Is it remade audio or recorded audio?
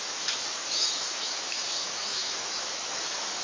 remade